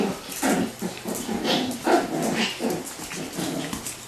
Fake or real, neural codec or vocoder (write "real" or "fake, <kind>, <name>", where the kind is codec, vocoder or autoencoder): real